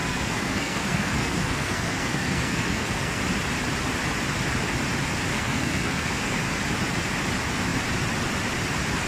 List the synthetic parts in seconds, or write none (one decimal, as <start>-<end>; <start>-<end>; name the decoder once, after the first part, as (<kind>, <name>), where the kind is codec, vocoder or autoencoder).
0.0-3.2 (codec, SNAC); 5.3-6.6